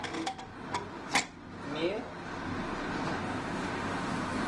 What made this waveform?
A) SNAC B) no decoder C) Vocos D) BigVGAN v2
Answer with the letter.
B